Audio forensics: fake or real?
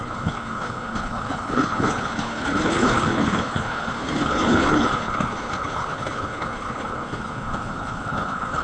fake